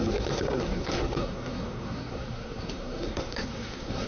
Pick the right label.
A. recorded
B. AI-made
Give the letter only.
B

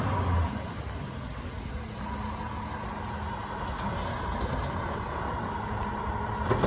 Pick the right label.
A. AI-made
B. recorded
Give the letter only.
B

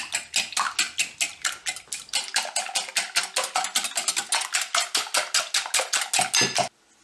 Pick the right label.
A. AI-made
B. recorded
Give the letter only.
B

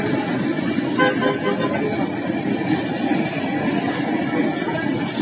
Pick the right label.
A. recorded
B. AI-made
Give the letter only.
A